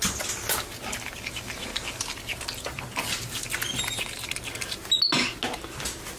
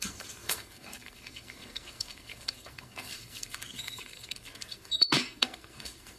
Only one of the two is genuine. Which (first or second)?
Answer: first